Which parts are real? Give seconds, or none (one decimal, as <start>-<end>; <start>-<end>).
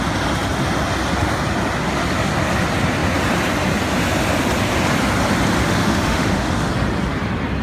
0.0-5.6; 6.7-7.6